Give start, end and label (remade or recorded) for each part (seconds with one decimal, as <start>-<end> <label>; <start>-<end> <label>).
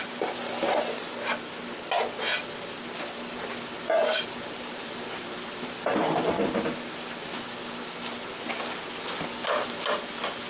0.0-4.0 recorded; 4.0-6.3 remade; 6.3-10.5 recorded